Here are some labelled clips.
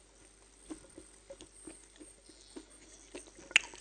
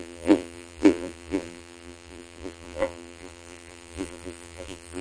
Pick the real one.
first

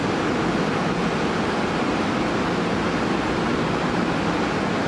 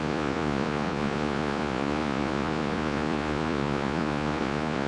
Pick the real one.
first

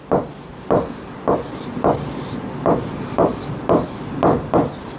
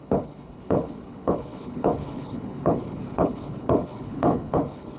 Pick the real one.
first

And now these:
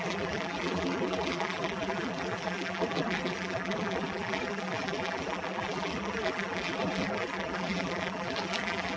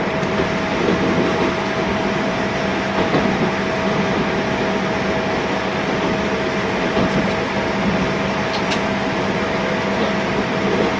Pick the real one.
second